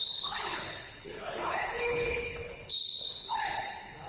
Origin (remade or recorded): remade